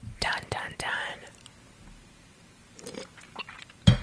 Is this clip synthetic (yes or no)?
yes